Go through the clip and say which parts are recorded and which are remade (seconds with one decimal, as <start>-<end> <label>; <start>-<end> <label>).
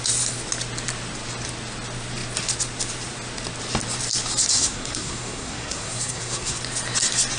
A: 0.0-4.5 recorded; 4.5-6.6 remade; 6.6-7.4 recorded